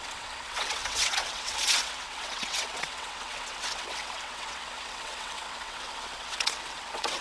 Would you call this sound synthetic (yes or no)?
yes